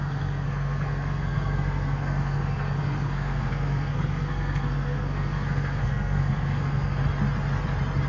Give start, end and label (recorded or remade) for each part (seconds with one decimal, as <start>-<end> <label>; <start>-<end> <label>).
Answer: 0.0-7.0 remade; 7.0-8.1 recorded